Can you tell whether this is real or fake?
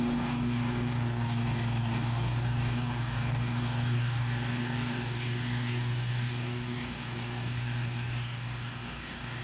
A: fake